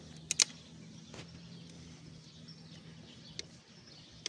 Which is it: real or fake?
real